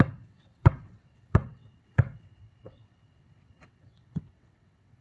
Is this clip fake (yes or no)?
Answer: yes